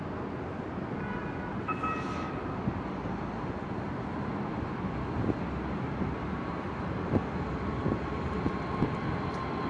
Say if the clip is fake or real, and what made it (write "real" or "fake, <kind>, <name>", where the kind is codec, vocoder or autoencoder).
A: real